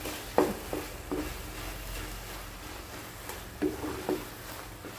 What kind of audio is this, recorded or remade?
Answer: recorded